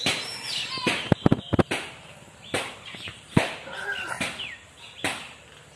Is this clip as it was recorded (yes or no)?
yes